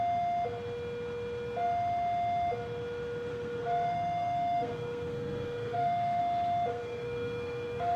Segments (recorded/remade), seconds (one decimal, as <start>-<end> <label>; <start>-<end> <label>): 0.0-3.3 recorded; 3.3-6.2 remade; 6.2-6.7 recorded; 6.7-8.0 remade